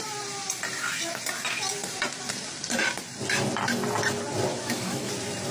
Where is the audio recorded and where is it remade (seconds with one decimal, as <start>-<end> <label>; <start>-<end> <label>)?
0.0-4.5 recorded; 4.5-5.1 remade; 5.1-5.5 recorded

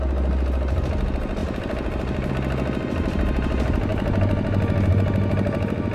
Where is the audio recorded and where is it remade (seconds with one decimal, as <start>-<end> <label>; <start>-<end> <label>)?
0.0-1.4 recorded; 1.4-2.3 remade; 2.3-5.9 recorded